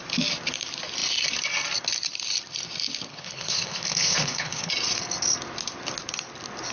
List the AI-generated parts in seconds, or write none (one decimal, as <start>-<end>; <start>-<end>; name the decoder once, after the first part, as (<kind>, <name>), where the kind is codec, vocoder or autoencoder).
3.1-4.7 (codec, HILCodec)